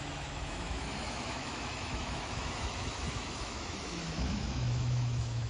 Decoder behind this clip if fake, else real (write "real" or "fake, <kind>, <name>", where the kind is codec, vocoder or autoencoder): fake, autoencoder, DAC-VAE